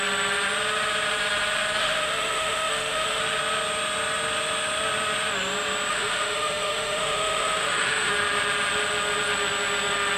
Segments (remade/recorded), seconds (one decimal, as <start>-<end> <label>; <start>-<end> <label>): 0.0-1.8 recorded; 1.8-3.2 remade; 3.2-5.9 recorded; 5.9-8.1 remade; 8.1-10.2 recorded